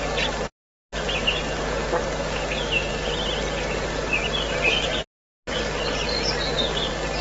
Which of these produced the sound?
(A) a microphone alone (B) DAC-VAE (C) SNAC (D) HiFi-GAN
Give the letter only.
A